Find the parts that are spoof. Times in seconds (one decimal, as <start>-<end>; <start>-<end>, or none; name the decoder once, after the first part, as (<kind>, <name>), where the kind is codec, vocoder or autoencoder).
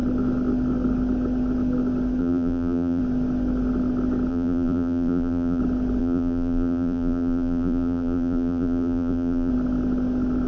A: 2.2-3.0 (vocoder, BigVGAN v2); 4.3-5.6; 6.0-9.5